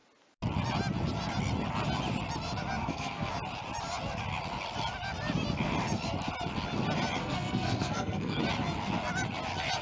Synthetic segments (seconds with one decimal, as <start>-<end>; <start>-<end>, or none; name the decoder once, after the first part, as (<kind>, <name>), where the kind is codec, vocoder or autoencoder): 2.8-3.3 (codec, SNAC); 7.2-8.4